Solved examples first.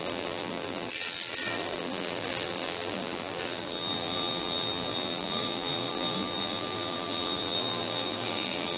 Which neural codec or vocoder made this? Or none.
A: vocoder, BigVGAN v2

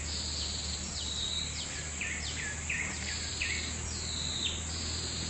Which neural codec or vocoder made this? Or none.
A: vocoder, BigVGAN v2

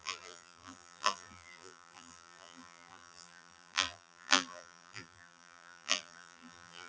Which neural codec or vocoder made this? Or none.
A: vocoder, BigVGAN v2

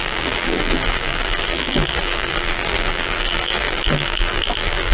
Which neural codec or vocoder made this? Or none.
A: vocoder, BigVGAN v2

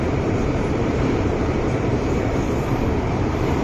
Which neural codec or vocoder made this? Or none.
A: vocoder, BigVGAN v2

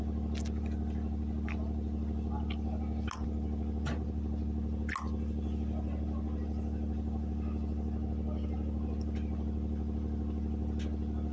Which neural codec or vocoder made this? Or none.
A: none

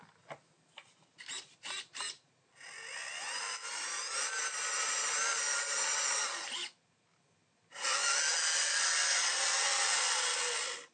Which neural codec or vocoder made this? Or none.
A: none